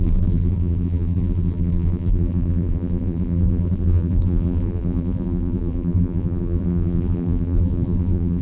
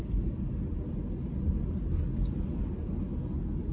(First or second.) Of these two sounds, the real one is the second